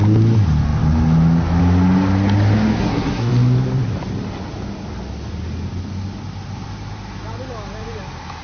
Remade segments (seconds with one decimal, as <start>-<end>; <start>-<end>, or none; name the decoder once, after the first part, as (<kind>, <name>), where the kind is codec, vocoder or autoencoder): 2.8-3.3 (codec, SNAC)